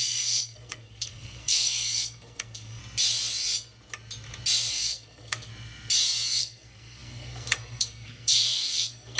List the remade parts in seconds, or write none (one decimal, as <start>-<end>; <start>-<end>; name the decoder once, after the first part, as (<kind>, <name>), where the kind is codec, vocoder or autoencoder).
0.0-2.8 (codec, SNAC); 4.7-5.5; 6.4-9.2